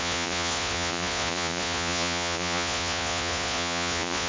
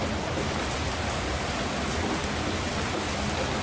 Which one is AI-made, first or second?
first